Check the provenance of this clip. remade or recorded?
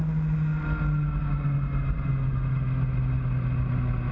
recorded